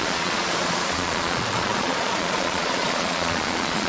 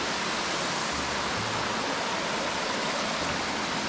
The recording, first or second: second